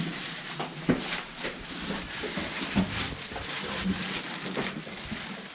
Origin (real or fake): real